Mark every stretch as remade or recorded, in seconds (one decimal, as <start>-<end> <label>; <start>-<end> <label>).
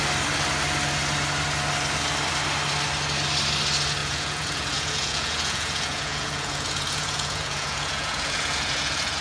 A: 0.0-4.0 recorded; 4.0-9.2 remade